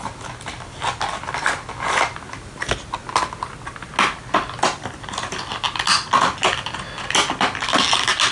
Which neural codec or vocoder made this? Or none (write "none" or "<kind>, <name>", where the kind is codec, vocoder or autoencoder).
none